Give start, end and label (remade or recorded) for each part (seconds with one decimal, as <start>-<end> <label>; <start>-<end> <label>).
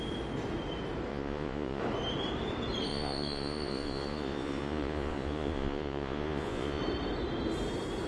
0.0-1.1 recorded; 1.1-1.8 remade; 1.8-2.9 recorded; 2.9-6.8 remade; 6.8-8.1 recorded